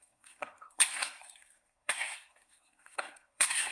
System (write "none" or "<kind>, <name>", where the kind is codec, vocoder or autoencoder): codec, SNAC